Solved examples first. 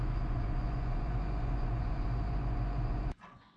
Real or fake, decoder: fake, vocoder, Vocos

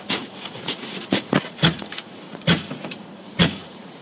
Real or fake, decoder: fake, vocoder, Vocos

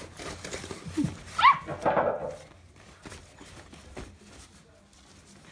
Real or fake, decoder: real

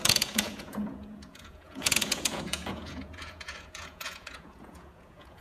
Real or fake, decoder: fake, vocoder, Vocos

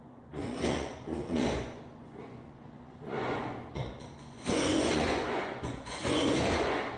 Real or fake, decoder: fake, vocoder, Vocos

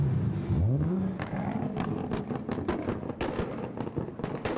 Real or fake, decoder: real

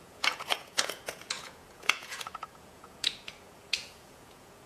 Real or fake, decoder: fake, vocoder, Vocos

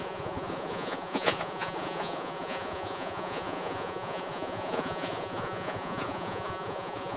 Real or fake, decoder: fake, vocoder, Vocos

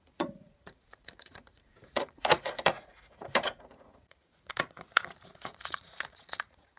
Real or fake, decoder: fake, vocoder, Vocos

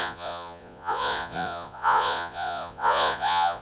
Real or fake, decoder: fake, vocoder, Vocos